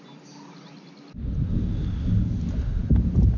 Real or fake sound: real